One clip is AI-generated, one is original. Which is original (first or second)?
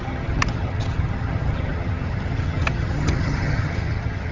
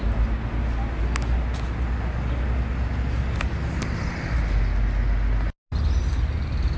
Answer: second